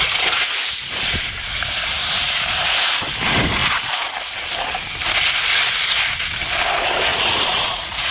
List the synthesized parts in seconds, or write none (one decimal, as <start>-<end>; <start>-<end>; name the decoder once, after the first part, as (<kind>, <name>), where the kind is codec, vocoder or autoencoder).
7.1-8.1 (vocoder, Vocos)